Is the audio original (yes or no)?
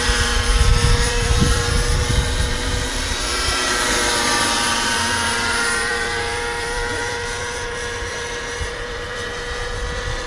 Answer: no